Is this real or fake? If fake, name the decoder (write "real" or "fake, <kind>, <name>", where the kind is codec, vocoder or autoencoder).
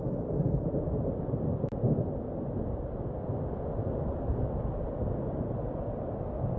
real